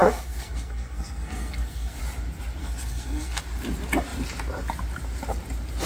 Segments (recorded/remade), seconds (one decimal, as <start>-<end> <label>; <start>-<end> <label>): 0.0-2.0 remade; 2.0-2.6 recorded; 2.6-3.4 remade; 3.4-5.9 recorded

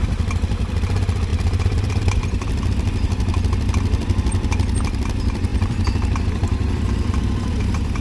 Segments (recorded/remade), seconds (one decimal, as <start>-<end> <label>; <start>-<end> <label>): 0.0-1.3 recorded; 1.3-2.7 remade; 2.7-5.5 recorded; 5.5-8.0 remade

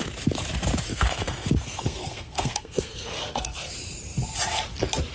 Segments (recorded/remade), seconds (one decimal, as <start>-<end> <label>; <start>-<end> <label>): 0.0-0.9 recorded; 0.9-3.7 remade; 3.7-5.1 recorded

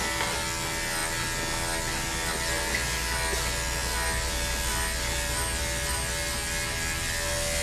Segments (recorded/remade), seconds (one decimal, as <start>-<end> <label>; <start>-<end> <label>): 0.0-7.6 recorded